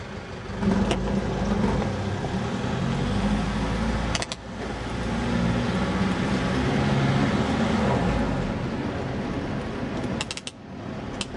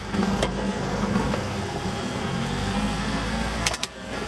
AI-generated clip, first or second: second